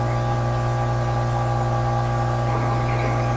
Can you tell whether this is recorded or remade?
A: recorded